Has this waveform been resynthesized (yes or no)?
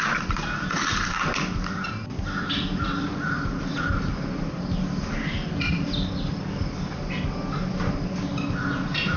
no